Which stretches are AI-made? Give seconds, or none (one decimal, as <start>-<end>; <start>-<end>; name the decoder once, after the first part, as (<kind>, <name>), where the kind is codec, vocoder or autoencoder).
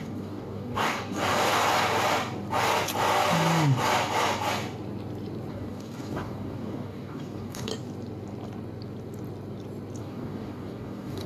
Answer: 0.0-1.5 (codec, DAC); 5.5-7.7; 10.0-11.3